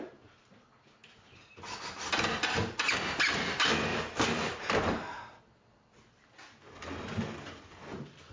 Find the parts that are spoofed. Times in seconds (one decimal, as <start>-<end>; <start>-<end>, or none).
1.0-1.8; 3.9-5.4